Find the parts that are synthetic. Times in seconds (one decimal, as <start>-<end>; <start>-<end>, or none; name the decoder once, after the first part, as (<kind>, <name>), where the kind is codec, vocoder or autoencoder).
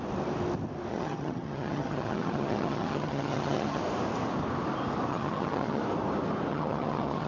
0.9-3.8 (vocoder, HiFi-GAN); 5.1-5.8; 6.5-7.3